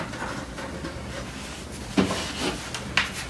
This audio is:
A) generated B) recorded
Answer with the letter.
B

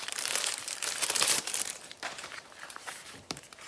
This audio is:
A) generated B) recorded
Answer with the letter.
A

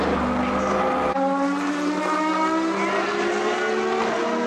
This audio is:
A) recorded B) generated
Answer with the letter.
A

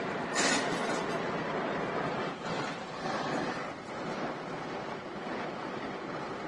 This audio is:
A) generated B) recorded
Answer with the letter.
A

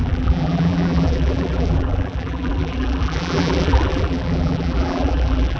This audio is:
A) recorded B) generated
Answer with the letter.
B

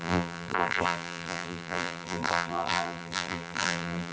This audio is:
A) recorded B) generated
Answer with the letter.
B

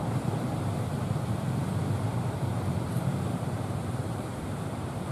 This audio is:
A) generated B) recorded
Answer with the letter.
A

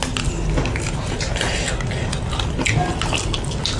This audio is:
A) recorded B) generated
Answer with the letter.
A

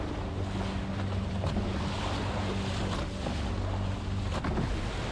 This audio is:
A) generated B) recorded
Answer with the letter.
B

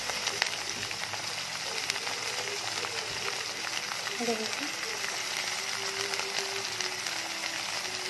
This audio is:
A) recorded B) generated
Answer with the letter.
A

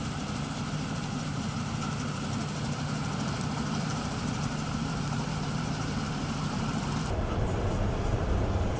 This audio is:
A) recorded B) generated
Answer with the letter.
B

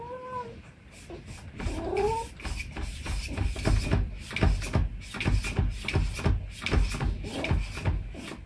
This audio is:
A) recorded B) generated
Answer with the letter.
A